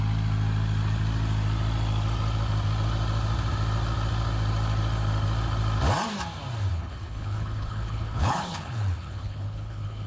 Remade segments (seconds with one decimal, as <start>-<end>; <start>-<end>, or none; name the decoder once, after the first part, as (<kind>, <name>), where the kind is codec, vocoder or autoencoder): 6.7-10.1 (codec, HILCodec)